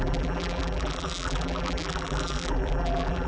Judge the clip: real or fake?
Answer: fake